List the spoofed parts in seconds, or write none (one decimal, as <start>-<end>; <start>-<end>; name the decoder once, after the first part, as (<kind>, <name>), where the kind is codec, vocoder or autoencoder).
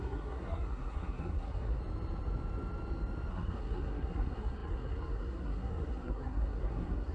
0.0-1.8 (codec, SNAC); 3.3-7.1